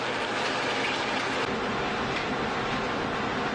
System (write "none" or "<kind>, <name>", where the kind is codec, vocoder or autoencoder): none